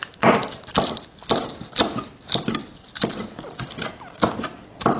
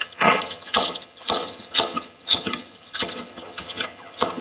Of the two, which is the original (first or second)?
first